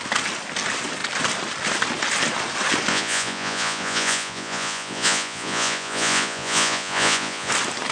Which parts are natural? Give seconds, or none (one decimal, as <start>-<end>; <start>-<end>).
0.0-2.9; 7.5-7.9